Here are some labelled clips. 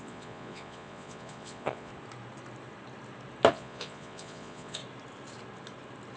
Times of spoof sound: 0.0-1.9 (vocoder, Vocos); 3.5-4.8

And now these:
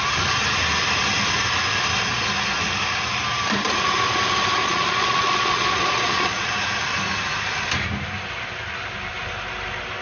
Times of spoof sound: 4.6-6.5 (vocoder, Vocos)